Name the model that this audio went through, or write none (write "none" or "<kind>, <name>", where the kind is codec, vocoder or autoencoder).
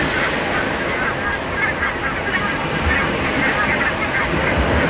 none